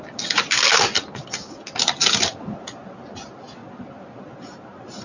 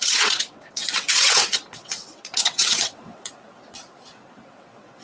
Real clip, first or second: first